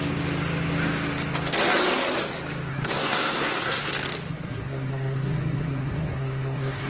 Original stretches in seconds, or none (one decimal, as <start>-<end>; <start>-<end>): 0.0-2.7; 3.9-4.3